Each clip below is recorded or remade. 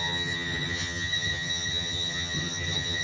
remade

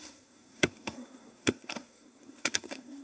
remade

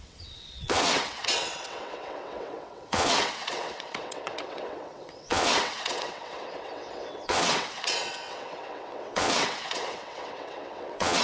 remade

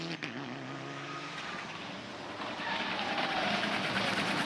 recorded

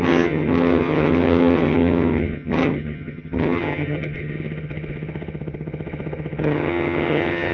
remade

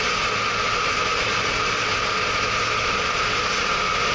recorded